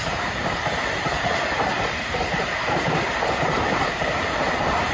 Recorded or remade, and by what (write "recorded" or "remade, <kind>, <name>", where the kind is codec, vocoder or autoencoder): remade, vocoder, BigVGAN v2